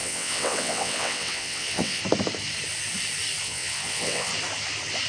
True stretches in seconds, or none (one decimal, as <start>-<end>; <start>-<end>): 2.0-3.4; 4.3-5.1